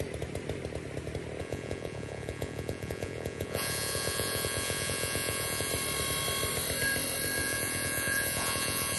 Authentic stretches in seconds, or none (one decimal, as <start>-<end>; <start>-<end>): 0.0-1.4; 5.7-7.4